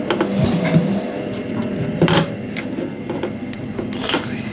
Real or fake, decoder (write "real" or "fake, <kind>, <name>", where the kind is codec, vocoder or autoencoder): real